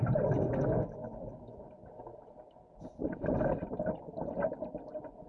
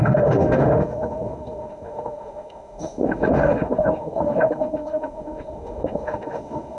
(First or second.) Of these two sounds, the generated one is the second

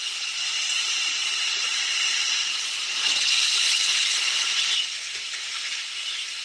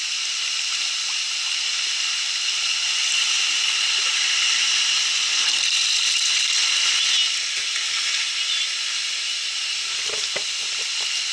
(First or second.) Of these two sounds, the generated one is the first